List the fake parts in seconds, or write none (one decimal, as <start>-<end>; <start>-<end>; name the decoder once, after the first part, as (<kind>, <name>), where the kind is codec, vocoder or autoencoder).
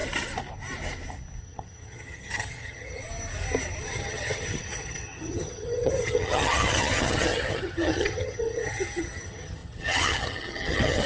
1.4-3.1 (vocoder, HiFi-GAN); 3.8-11.1